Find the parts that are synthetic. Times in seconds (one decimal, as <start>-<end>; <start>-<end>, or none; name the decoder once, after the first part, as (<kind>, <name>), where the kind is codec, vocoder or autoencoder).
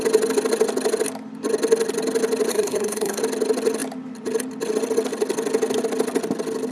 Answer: 2.5-3.2 (codec, SNAC)